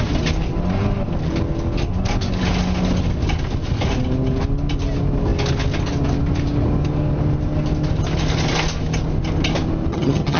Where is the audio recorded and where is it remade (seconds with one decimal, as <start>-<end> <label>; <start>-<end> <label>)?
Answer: 0.0-9.9 recorded; 9.9-10.4 remade